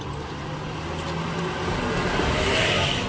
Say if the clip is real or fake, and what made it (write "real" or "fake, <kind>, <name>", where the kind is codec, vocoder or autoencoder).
real